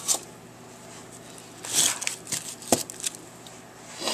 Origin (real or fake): real